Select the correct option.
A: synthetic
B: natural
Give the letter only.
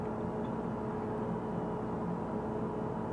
B